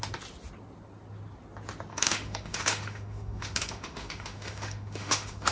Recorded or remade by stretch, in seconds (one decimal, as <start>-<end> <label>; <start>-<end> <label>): 0.0-1.9 recorded; 1.9-5.5 remade